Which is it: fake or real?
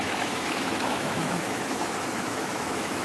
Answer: fake